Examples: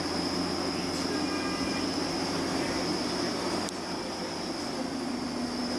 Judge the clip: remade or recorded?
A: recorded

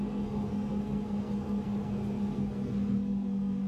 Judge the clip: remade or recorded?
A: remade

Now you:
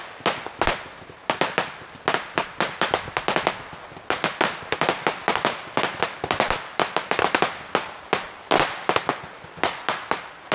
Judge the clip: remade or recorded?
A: recorded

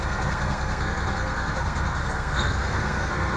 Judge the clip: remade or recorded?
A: remade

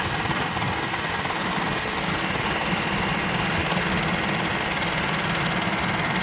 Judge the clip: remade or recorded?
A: recorded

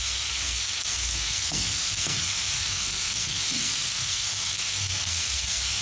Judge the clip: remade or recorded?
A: remade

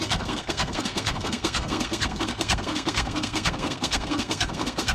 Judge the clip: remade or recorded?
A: remade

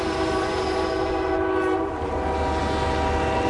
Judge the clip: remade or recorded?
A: recorded